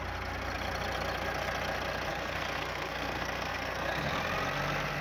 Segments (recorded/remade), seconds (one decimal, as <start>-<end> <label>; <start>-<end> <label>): 0.0-2.1 recorded; 2.1-4.1 remade; 4.1-5.0 recorded